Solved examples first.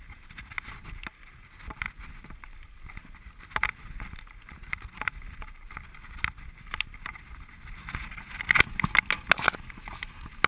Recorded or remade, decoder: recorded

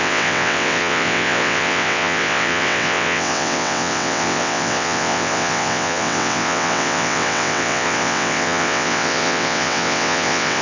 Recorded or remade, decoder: remade, vocoder, WaveNeXt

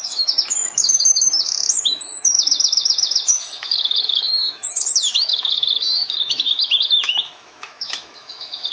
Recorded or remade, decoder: remade, autoencoder, DAC-VAE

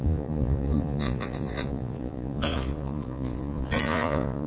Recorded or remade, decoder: remade, vocoder, Vocos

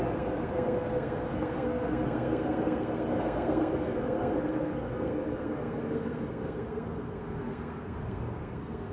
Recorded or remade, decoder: remade, codec, SNAC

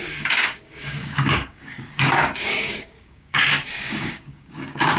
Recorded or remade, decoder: remade, codec, DAC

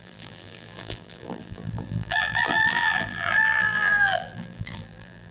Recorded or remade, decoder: remade, vocoder, BigVGAN v2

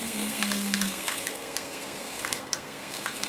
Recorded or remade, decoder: remade, codec, SNAC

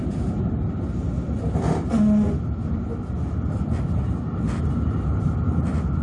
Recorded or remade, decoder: recorded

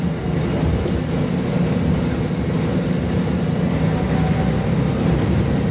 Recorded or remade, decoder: recorded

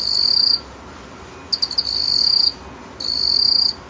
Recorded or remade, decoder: recorded